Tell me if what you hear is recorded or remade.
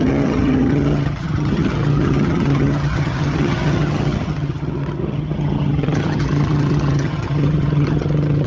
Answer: remade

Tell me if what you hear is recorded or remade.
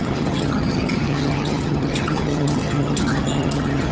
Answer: remade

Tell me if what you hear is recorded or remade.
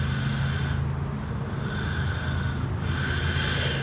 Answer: recorded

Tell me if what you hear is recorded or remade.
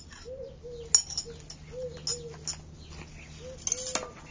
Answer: recorded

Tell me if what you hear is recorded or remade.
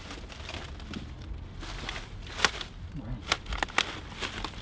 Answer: recorded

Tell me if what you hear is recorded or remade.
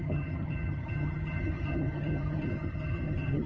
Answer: remade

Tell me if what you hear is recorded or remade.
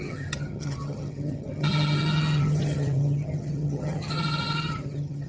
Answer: remade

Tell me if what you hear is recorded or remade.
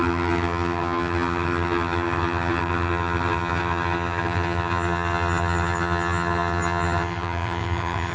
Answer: remade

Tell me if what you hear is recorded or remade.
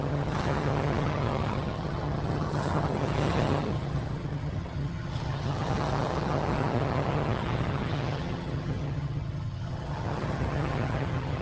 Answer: remade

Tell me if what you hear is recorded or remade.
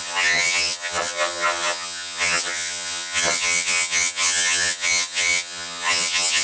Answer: remade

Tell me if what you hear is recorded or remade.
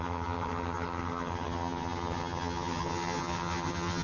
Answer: remade